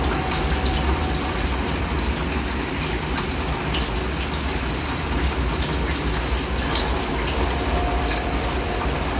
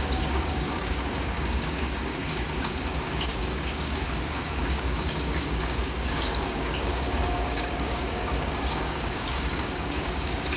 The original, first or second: first